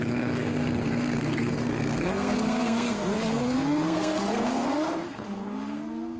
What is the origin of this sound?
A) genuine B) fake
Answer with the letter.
B